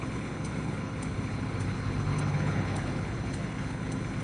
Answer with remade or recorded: remade